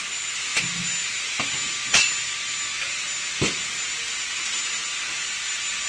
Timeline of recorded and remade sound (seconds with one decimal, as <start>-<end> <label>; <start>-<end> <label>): 0.0-5.9 recorded